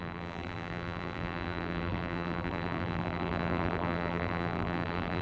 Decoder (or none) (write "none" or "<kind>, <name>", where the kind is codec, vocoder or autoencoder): vocoder, BigVGAN v2